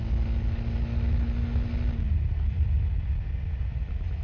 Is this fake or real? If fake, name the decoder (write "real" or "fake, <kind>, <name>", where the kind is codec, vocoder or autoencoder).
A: real